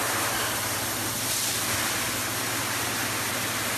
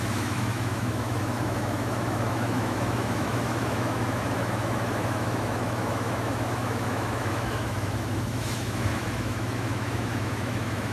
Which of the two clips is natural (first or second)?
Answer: first